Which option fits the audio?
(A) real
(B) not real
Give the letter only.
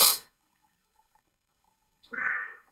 B